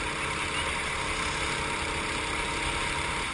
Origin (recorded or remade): recorded